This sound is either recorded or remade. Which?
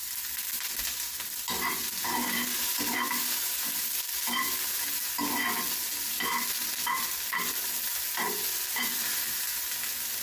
recorded